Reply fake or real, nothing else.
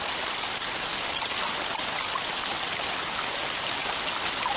real